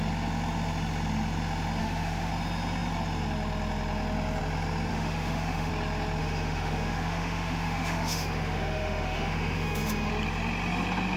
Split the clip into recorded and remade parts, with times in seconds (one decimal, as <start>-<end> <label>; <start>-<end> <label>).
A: 0.0-1.8 recorded; 1.8-2.3 remade; 2.3-4.9 recorded; 4.9-5.7 remade; 5.7-6.2 recorded; 6.2-10.1 remade; 10.1-11.2 recorded

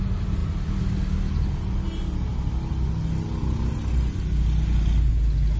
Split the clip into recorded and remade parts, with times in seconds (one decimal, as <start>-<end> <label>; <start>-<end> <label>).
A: 0.0-5.6 recorded

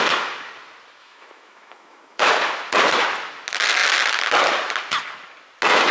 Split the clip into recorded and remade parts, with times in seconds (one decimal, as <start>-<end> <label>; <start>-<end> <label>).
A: 0.0-1.0 recorded; 1.0-2.3 remade; 2.3-5.9 recorded